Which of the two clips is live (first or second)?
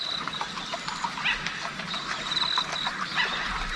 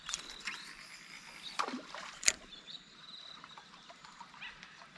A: first